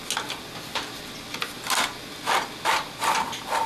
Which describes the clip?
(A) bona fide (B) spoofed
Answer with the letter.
A